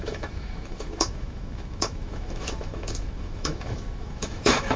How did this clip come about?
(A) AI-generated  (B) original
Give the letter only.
A